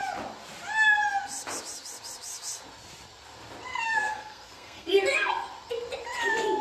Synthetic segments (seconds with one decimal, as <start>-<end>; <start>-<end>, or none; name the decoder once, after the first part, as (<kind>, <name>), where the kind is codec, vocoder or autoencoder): 3.7-5.3 (codec, SNAC)